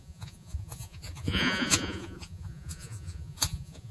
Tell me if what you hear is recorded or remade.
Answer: remade